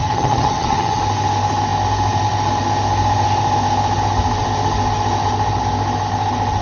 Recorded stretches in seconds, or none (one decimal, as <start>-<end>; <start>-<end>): 1.0-6.6